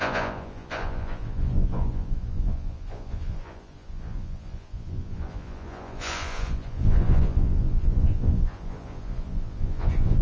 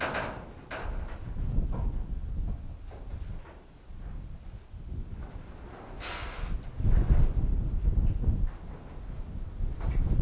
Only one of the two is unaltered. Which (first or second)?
second